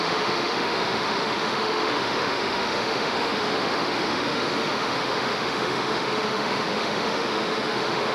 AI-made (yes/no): yes